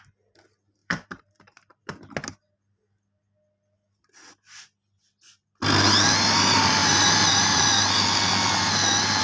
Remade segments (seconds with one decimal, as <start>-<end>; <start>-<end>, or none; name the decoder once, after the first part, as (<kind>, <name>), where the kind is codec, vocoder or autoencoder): 0.8-1.3 (vocoder, BigVGAN v2); 6.8-7.9